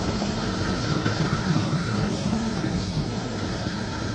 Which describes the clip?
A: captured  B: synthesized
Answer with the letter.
B